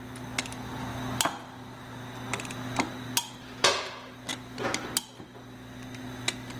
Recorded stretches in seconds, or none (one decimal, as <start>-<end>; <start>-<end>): 0.0-6.6